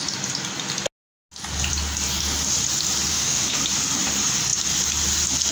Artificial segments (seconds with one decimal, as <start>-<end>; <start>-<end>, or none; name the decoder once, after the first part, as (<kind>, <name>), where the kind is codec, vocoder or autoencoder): 3.1-3.6 (autoencoder, DAC-VAE)